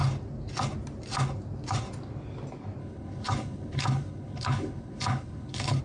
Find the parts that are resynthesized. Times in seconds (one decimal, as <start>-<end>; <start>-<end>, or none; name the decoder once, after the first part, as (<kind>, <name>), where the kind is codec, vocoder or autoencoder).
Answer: 2.8-5.8 (codec, HILCodec)